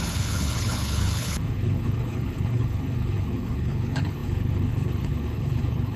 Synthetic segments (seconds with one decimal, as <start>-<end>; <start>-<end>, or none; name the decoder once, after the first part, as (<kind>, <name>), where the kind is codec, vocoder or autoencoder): 0.0-6.0 (codec, HILCodec)